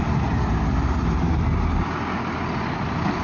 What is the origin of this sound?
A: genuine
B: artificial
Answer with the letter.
A